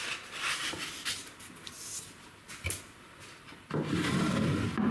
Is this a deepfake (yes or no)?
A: no